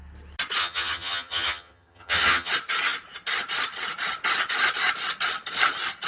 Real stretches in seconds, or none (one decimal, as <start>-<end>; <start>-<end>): 0.0-0.6; 2.5-6.1